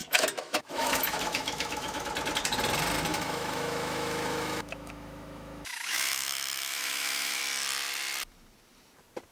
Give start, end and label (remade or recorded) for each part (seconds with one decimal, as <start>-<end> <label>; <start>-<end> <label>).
0.0-2.1 remade; 2.1-3.1 recorded; 3.1-7.4 remade; 7.4-9.3 recorded

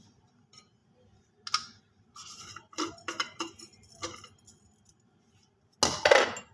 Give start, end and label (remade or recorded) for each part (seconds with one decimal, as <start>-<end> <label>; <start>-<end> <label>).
0.0-6.5 recorded

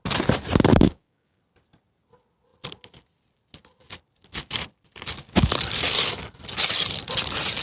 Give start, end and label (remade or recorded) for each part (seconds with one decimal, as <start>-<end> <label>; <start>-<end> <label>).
0.0-0.7 recorded; 0.7-1.4 remade; 1.4-7.6 recorded

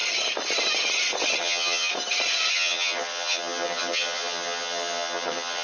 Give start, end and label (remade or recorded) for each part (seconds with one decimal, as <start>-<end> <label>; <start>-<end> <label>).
0.0-1.4 recorded; 1.4-1.9 remade; 1.9-2.5 recorded; 2.5-5.6 remade

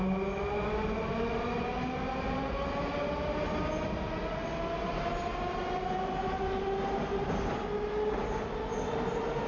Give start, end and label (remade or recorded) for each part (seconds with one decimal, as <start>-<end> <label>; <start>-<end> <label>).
0.0-9.5 recorded

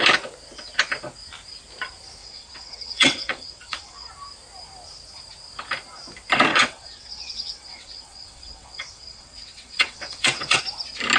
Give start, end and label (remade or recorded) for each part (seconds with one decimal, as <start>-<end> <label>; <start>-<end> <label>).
0.0-2.2 recorded; 2.2-4.1 remade; 4.1-6.5 recorded; 6.5-10.6 remade; 10.6-11.2 recorded